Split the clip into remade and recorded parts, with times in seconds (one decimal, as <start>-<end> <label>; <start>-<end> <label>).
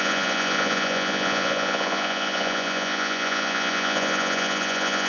0.0-5.1 remade